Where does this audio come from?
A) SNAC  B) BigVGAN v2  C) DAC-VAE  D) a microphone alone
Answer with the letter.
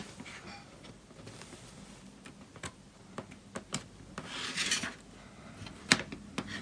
D